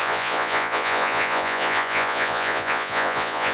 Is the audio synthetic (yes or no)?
yes